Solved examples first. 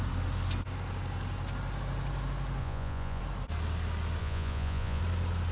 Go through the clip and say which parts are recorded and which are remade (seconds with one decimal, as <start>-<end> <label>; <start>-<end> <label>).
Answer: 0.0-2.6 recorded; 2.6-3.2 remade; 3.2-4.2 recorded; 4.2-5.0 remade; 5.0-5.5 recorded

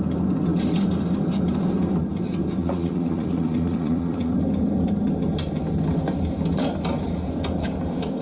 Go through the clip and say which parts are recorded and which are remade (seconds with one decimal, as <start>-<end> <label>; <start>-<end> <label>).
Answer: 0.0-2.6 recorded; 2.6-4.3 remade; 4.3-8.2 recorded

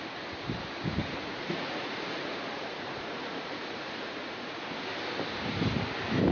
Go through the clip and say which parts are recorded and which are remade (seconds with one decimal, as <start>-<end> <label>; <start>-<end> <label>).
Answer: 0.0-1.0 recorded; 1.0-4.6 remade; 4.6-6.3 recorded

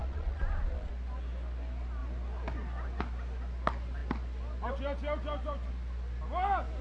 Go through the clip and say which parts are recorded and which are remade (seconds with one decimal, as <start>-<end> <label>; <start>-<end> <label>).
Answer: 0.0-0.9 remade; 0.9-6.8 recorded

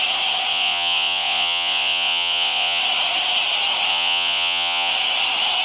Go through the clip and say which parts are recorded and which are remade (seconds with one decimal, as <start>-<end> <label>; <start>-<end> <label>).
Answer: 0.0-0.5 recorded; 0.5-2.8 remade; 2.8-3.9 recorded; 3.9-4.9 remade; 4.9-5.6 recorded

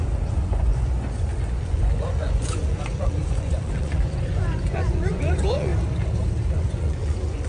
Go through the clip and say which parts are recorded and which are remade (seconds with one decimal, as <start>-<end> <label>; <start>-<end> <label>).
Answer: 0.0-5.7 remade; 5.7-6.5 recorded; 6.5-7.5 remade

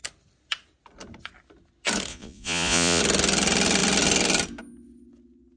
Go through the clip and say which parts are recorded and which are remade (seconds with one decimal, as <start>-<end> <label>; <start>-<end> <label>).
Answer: 0.0-2.1 recorded; 2.1-3.0 remade; 3.0-5.6 recorded

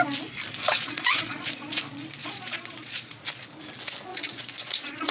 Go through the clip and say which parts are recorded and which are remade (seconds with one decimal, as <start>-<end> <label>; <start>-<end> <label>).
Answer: 0.0-0.6 recorded; 0.6-1.8 remade; 1.8-2.2 recorded; 2.2-3.2 remade; 3.2-4.1 recorded; 4.1-5.1 remade